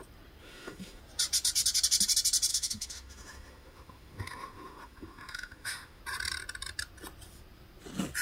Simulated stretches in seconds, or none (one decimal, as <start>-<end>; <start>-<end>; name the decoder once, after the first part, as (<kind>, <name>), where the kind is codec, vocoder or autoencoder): 0.4-1.0 (autoencoder, DAC-VAE); 2.5-6.0